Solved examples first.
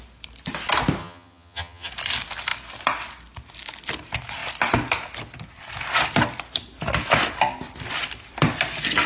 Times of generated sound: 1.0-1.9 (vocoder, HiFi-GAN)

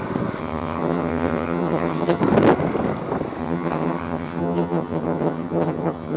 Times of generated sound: 0.4-2.2 (vocoder, HiFi-GAN); 3.4-6.2

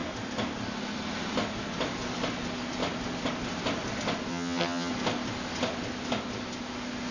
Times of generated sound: 4.3-4.9 (vocoder, HiFi-GAN)